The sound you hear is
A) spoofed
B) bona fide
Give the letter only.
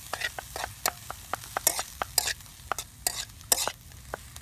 B